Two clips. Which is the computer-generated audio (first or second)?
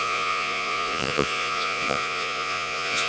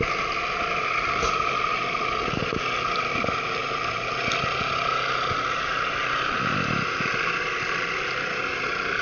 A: first